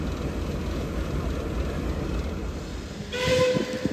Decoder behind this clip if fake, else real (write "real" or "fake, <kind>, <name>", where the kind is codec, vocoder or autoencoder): real